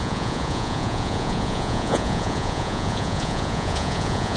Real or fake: fake